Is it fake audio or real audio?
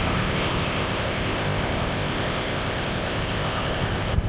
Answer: fake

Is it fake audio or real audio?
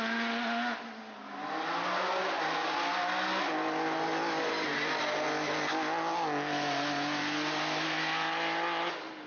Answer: real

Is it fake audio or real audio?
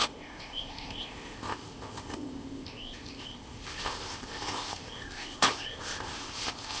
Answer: fake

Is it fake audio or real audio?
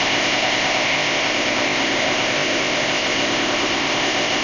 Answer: fake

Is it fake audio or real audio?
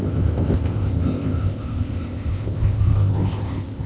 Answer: fake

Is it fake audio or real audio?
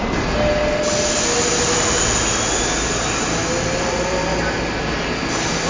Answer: real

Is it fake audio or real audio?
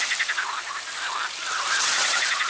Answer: real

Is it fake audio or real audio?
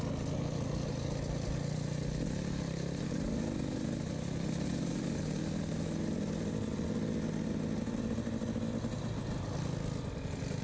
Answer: real